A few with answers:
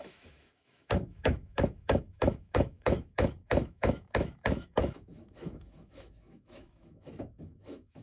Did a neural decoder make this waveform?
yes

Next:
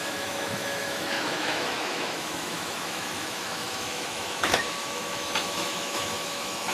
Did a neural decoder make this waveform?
yes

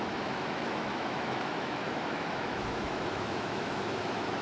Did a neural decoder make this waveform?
yes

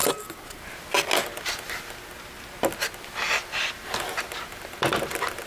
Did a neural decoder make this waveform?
no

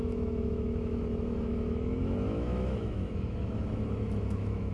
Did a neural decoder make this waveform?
yes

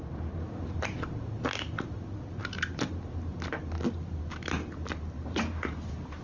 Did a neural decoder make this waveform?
no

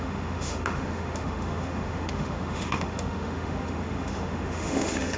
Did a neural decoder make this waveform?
yes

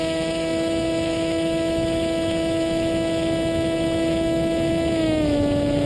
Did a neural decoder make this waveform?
yes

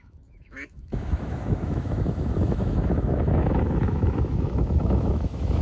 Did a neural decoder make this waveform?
yes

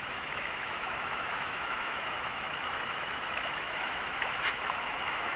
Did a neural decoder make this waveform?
yes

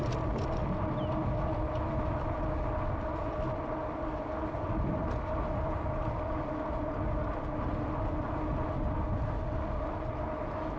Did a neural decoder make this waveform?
no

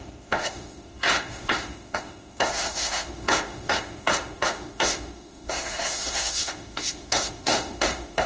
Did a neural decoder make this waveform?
yes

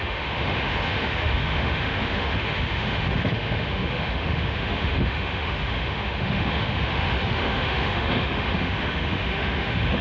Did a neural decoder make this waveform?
yes